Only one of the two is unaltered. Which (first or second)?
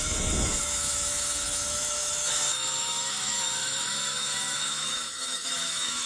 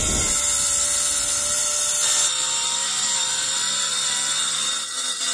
second